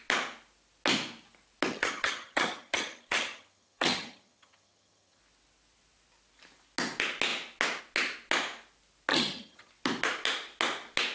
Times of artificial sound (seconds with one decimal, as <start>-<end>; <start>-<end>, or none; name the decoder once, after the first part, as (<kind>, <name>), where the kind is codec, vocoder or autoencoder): 1.7-5.2 (vocoder, HiFi-GAN); 9.1-9.7